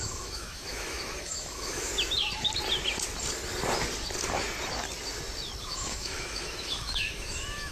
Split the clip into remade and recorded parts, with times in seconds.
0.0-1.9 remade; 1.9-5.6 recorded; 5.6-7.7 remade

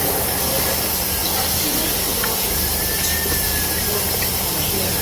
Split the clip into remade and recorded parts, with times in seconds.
0.0-5.0 recorded

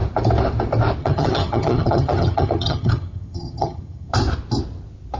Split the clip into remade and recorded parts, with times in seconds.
0.0-1.0 recorded; 1.0-4.1 remade; 4.1-5.2 recorded

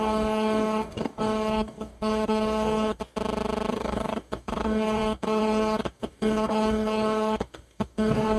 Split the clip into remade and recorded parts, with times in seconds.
0.0-3.0 remade; 3.0-3.7 recorded; 3.7-8.4 remade

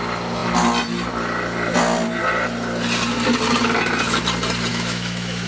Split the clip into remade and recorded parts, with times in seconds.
0.0-4.7 recorded; 4.7-5.5 remade

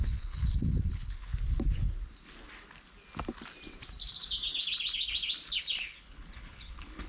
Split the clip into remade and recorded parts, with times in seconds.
0.0-1.3 remade; 1.3-5.6 recorded; 5.6-7.1 remade

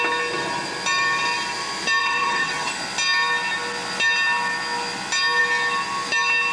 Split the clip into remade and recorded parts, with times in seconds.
0.0-2.0 recorded; 2.0-2.7 remade; 2.7-6.5 recorded

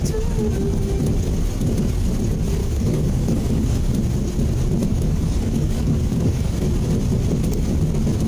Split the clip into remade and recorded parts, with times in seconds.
0.0-2.6 recorded; 2.6-3.9 remade; 3.9-4.9 recorded; 4.9-6.7 remade; 6.7-8.3 recorded